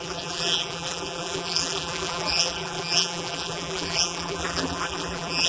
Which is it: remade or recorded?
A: remade